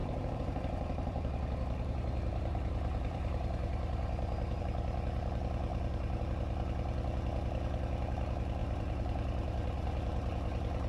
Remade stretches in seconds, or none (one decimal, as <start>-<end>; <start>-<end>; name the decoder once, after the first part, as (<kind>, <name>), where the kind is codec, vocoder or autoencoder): 0.0-4.6 (vocoder, BigVGAN v2); 5.7-6.2; 8.6-10.9